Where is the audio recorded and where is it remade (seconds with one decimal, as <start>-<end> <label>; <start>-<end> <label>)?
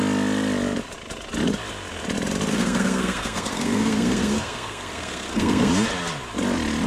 0.0-2.5 recorded; 2.5-5.7 remade; 5.7-6.9 recorded